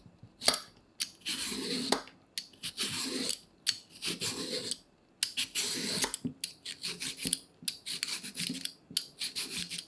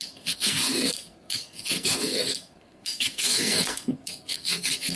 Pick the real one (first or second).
first